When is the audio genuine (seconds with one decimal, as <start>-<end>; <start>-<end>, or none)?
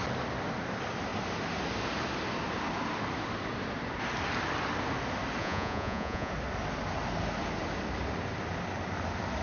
0.0-5.4; 6.3-9.4